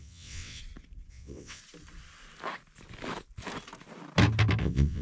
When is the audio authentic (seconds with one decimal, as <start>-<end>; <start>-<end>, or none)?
0.6-1.1; 1.6-4.6